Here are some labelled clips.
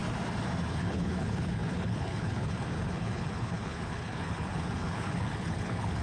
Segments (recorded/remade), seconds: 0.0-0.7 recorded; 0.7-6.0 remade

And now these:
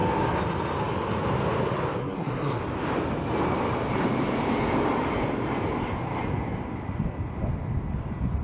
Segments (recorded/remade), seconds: 0.0-2.0 recorded; 2.0-2.6 remade; 2.6-8.4 recorded

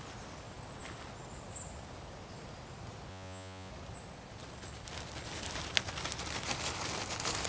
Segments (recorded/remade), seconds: 0.0-3.1 recorded; 3.1-3.7 remade; 3.7-7.5 recorded

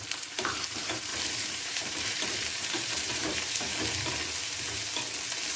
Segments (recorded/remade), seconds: 0.0-3.7 remade; 3.7-5.6 recorded

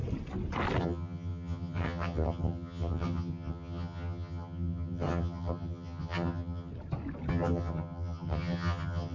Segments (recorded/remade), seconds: 0.0-0.8 recorded; 0.8-6.7 remade; 6.7-7.3 recorded; 7.3-9.1 remade

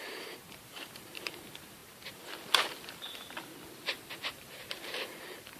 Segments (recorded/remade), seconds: 0.0-1.8 remade; 1.8-4.1 recorded; 4.1-5.6 remade

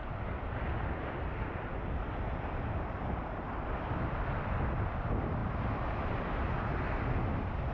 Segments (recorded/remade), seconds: 0.0-1.4 recorded; 1.4-5.4 remade; 5.4-6.8 recorded; 6.8-7.7 remade